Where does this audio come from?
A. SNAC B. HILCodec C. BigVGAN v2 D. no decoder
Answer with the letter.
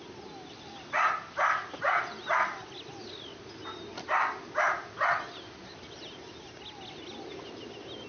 D